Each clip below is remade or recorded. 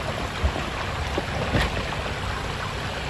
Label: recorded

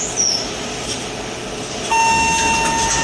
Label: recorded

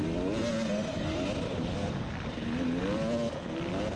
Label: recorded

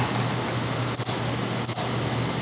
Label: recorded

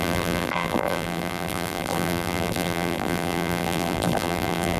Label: remade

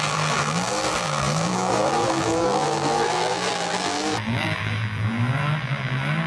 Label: remade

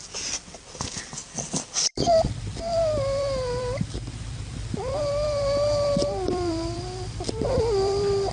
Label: remade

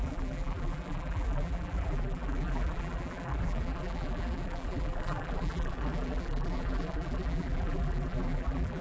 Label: remade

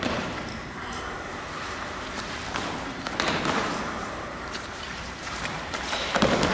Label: remade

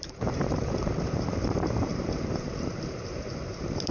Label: remade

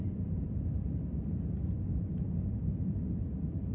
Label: remade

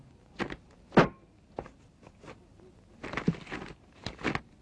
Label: recorded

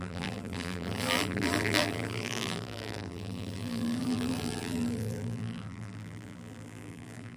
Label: remade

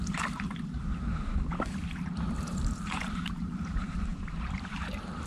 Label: remade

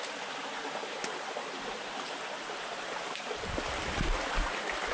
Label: remade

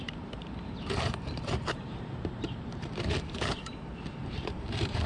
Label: remade